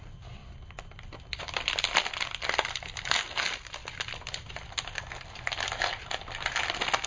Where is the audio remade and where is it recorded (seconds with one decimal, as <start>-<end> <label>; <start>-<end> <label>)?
0.0-0.4 remade; 0.4-3.3 recorded; 3.3-3.8 remade; 3.8-7.1 recorded